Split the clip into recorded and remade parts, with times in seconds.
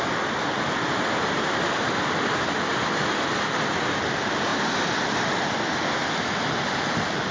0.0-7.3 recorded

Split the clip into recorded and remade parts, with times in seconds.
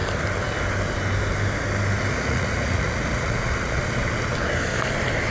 0.0-2.1 recorded; 2.1-3.8 remade; 3.8-5.3 recorded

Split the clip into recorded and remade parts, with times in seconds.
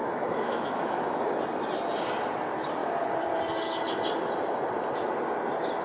0.0-1.3 remade; 1.3-5.8 recorded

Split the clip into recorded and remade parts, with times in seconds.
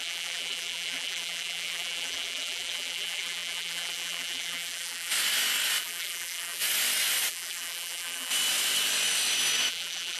0.0-5.1 remade; 5.1-5.8 recorded; 5.8-6.6 remade; 6.6-7.3 recorded; 7.3-8.3 remade; 8.3-9.7 recorded; 9.7-10.2 remade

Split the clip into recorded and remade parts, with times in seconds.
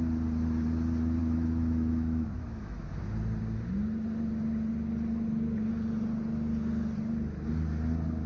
0.0-1.2 recorded; 1.2-2.9 remade; 2.9-8.3 recorded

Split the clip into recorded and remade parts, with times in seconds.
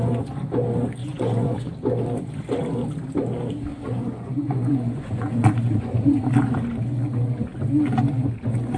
0.0-1.0 recorded; 1.0-1.7 remade; 1.7-3.7 recorded; 3.7-6.2 remade; 6.2-8.8 recorded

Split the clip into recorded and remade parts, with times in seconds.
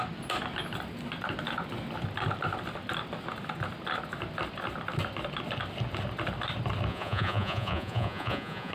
0.0-6.9 recorded; 6.9-8.7 remade